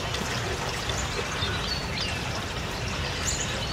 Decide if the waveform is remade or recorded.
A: recorded